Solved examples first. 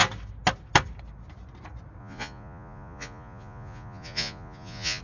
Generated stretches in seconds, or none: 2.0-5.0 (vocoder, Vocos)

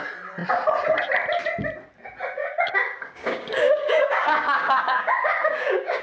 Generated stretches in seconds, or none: 2.4-6.0 (codec, DAC)

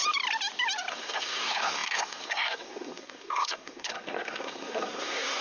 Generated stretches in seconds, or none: 0.9-5.4 (codec, SNAC)

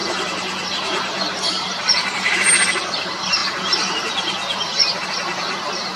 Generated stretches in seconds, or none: 1.5-3.4 (vocoder, BigVGAN v2); 5.6-6.0

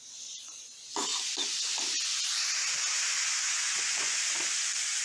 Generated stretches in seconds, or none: 3.6-4.2 (vocoder, Vocos)

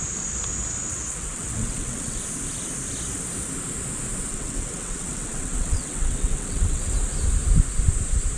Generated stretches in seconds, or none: 0.9-2.2 (vocoder, WaveNeXt); 4.3-6.9